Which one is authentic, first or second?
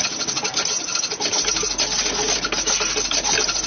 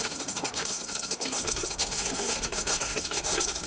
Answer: first